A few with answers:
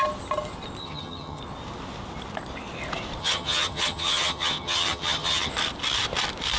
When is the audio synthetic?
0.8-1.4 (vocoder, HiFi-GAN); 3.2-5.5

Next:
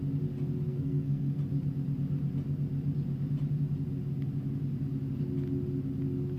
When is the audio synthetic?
0.7-1.4 (codec, SNAC)

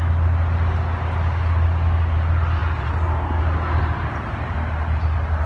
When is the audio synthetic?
none